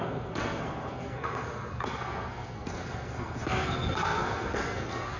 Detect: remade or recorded remade